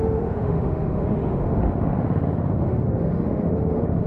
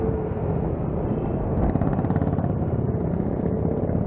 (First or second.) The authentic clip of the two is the second